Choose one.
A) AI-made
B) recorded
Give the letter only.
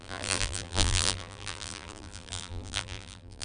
A